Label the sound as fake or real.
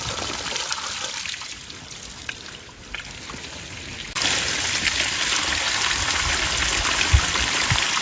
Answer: real